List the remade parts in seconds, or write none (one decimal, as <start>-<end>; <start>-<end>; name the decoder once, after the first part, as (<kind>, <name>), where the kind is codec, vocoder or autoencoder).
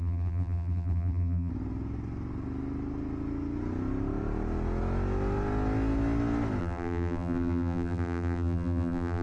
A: 0.0-1.5 (vocoder, BigVGAN v2); 6.6-9.2